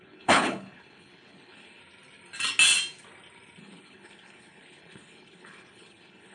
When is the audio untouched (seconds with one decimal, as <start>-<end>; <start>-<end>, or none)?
1.8-3.6

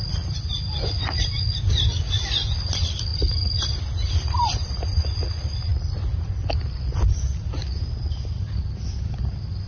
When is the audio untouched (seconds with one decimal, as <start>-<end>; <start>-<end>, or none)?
0.0-9.7

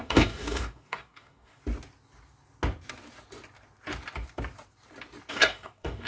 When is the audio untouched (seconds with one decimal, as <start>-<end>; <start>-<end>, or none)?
1.6-5.3

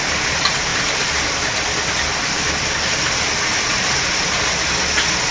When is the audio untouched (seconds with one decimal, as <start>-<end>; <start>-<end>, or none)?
0.0-5.3